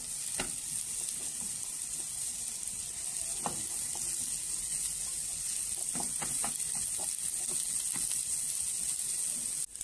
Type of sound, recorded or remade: recorded